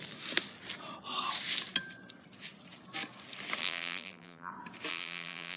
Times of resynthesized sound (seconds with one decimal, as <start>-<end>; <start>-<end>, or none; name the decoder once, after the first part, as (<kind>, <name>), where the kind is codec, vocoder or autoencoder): 3.6-4.5 (vocoder, BigVGAN v2); 4.9-5.6